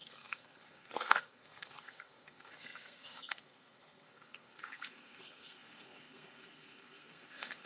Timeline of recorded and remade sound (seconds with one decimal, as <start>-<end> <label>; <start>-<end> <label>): 0.0-7.7 remade